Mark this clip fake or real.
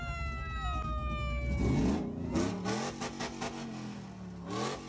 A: real